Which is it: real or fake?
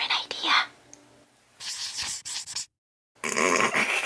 real